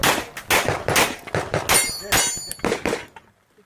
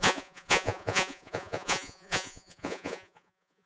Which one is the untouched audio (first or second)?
first